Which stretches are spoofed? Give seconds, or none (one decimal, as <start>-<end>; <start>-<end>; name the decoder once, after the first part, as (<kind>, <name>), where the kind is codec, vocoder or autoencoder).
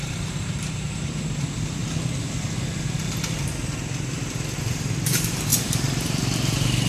0.0-1.8 (vocoder, BigVGAN v2); 4.6-6.9